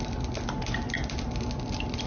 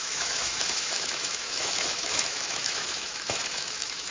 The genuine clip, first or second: first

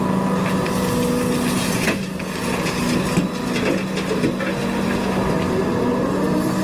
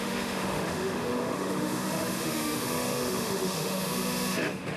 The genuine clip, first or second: first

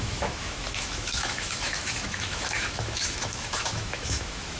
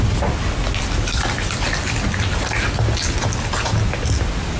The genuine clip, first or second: second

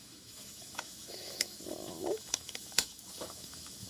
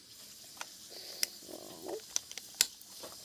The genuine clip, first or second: second